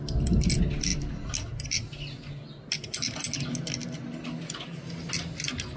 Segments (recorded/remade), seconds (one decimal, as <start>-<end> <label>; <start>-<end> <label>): 0.0-5.8 recorded